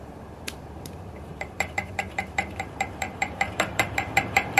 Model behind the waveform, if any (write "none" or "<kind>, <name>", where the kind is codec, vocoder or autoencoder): vocoder, BigVGAN v2